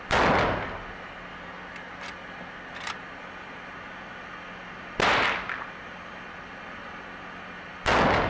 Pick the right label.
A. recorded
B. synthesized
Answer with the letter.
A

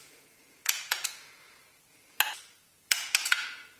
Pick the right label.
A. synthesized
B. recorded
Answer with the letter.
A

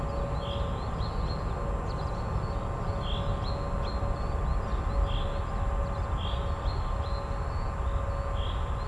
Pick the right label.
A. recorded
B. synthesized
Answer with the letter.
A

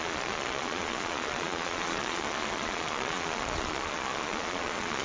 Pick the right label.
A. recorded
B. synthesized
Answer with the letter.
B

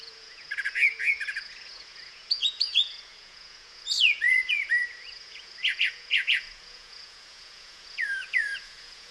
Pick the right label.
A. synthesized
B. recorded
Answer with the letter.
A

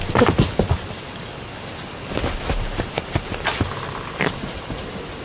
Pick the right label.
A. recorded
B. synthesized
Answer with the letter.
A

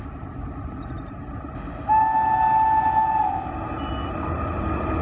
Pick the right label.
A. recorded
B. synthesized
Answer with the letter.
A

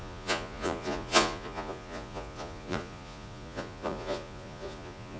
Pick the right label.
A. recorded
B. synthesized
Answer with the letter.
B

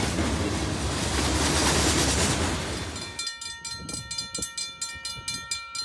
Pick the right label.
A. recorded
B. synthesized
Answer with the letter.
A